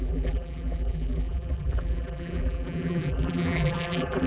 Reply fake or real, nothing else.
fake